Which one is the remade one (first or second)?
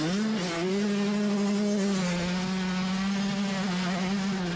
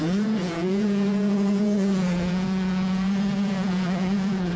second